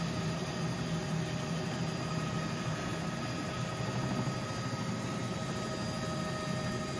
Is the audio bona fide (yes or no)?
yes